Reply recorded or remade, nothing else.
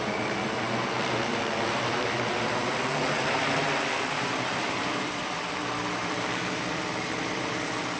remade